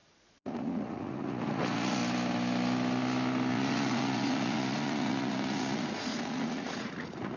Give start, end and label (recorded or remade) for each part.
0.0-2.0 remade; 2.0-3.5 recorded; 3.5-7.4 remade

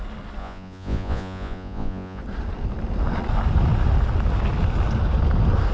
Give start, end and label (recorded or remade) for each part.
0.0-0.4 recorded; 0.4-2.2 remade; 2.2-5.7 recorded

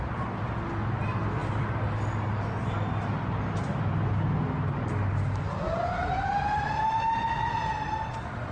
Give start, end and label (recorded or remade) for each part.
0.0-8.5 recorded